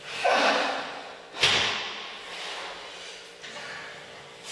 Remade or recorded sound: recorded